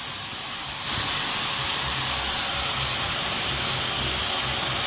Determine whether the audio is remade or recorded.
recorded